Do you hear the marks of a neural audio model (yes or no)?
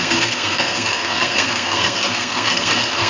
yes